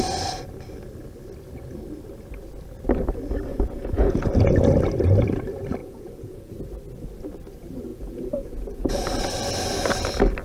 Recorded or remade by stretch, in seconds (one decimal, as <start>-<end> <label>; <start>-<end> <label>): 0.0-3.5 recorded; 3.5-4.2 remade; 4.2-5.8 recorded; 5.8-6.5 remade; 6.5-7.9 recorded; 7.9-8.9 remade; 8.9-10.4 recorded